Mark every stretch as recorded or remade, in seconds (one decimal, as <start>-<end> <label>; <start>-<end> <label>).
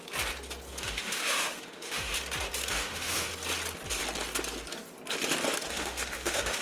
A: 0.0-0.7 recorded; 0.7-2.1 remade; 2.1-2.7 recorded; 2.7-3.3 remade; 3.3-5.7 recorded; 5.7-6.6 remade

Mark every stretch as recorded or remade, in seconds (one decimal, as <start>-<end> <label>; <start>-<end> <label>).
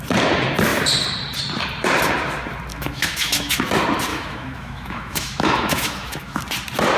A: 0.0-2.7 recorded; 2.7-3.6 remade; 3.6-4.1 recorded; 4.1-6.4 remade; 6.4-7.0 recorded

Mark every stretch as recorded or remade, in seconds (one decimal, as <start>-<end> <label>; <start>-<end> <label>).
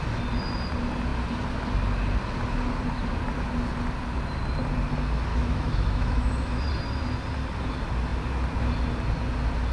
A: 0.0-5.3 recorded; 5.3-6.6 remade; 6.6-9.7 recorded